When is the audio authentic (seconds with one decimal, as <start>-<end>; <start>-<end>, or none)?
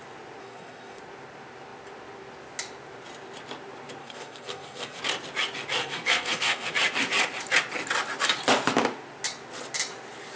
0.0-0.4; 1.0-4.0; 5.0-5.8; 6.7-10.4